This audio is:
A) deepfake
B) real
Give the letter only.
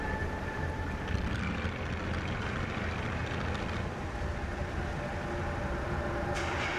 A